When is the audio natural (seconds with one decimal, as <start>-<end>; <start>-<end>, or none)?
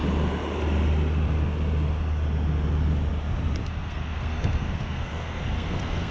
0.0-3.7